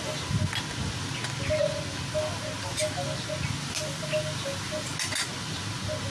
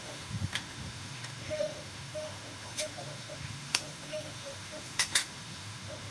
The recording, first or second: first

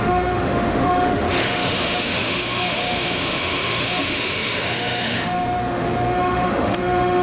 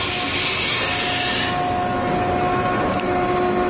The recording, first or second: second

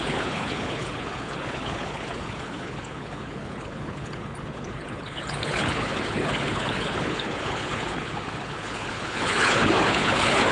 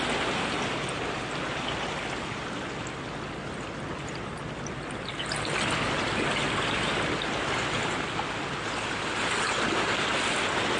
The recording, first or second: second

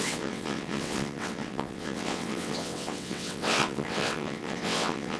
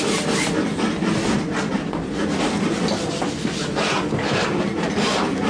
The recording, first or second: second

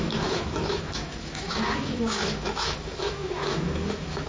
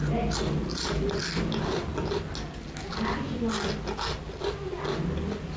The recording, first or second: second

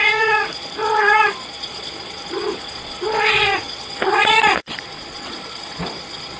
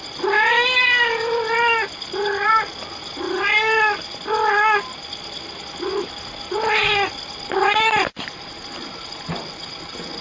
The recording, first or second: second